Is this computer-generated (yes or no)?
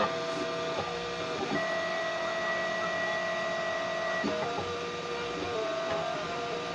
no